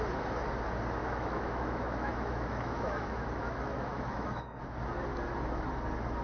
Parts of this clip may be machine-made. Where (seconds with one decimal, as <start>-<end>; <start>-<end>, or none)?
1.0-4.6